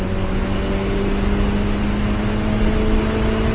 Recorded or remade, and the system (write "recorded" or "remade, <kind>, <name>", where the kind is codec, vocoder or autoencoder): recorded